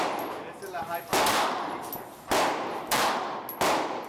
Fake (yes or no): no